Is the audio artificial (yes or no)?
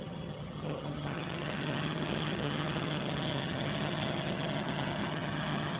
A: yes